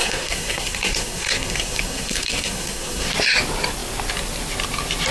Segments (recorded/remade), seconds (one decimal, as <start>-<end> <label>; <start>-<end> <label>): 0.0-3.1 remade; 3.1-5.1 recorded